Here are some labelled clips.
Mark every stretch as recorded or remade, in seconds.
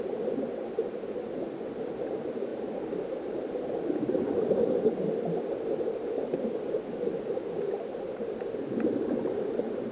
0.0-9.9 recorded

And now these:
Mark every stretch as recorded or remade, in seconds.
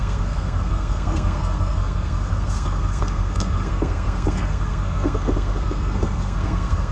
0.0-6.9 remade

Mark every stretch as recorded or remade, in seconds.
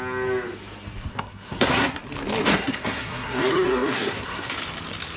0.0-1.1 recorded; 1.1-2.0 remade; 2.0-2.5 recorded; 2.5-4.5 remade; 4.5-5.2 recorded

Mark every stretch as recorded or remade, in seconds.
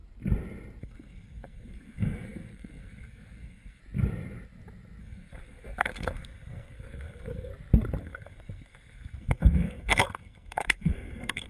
0.0-0.8 recorded; 0.8-3.8 remade; 3.8-5.0 recorded; 5.0-7.5 remade; 7.5-8.0 recorded; 8.0-11.5 remade